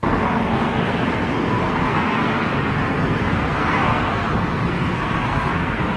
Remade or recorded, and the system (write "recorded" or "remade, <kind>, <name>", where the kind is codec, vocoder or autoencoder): remade, codec, SNAC